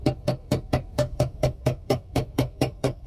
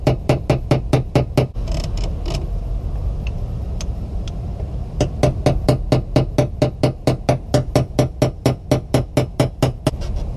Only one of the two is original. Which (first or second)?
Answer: second